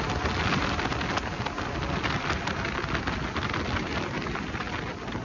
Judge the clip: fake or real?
real